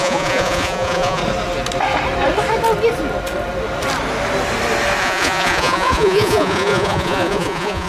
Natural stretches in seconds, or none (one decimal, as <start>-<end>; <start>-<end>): 1.2-5.0

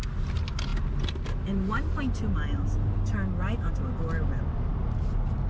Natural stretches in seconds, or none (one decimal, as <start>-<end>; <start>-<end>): 0.0-5.5

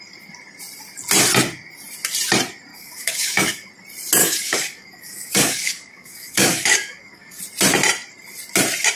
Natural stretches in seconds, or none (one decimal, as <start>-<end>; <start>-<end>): 0.0-2.7; 3.7-4.2; 7.4-9.0

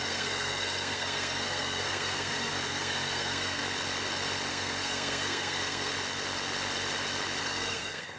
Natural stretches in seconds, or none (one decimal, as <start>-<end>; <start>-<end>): 3.6-4.5; 5.9-7.4

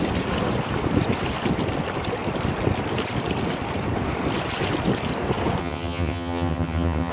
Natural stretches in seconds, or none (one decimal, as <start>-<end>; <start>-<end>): 0.0-5.6